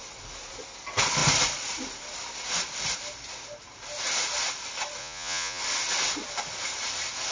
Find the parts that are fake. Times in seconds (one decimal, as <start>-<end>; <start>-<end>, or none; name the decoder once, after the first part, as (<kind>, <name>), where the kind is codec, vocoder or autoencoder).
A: 5.0-5.6 (vocoder, Vocos)